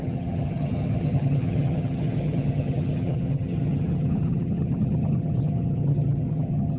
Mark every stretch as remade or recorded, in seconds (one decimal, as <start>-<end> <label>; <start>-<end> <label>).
0.0-6.8 remade